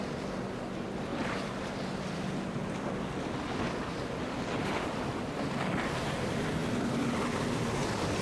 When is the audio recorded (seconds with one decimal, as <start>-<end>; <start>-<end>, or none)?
0.0-8.2